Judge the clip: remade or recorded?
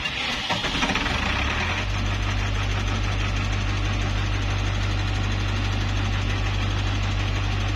recorded